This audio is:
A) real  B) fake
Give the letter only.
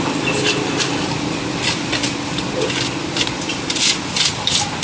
A